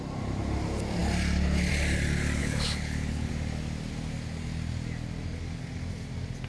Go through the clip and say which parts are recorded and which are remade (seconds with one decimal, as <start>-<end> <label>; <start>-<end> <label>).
0.0-2.4 recorded; 2.4-3.3 remade; 3.3-6.5 recorded